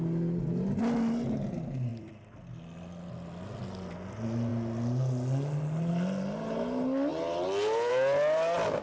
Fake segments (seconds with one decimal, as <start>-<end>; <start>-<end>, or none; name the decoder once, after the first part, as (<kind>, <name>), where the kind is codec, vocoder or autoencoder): 1.9-2.5 (vocoder, BigVGAN v2); 7.1-7.9